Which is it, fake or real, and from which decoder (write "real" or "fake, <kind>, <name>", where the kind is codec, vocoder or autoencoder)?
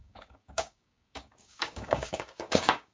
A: fake, codec, DAC